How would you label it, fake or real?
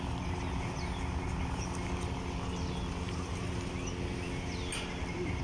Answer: real